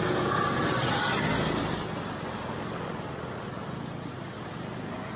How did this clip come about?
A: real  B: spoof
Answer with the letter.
A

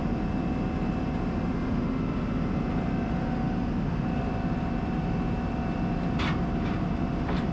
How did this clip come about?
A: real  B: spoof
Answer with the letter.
A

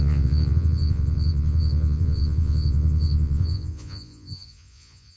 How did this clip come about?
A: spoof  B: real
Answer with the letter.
A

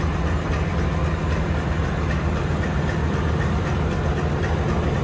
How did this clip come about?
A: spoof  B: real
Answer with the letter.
B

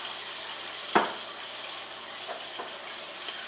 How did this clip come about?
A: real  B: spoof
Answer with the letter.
A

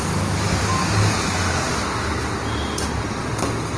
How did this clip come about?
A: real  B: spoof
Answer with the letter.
A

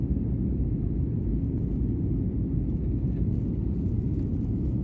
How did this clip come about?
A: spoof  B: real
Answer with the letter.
B